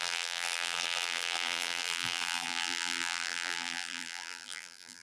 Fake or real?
fake